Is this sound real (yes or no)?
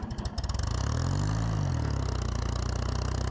yes